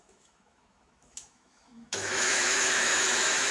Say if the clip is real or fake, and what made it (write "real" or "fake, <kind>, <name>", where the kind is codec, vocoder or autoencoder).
fake, autoencoder, DAC-VAE